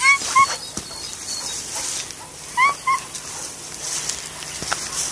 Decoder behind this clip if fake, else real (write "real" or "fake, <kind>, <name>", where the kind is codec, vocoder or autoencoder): real